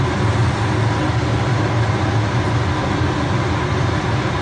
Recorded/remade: recorded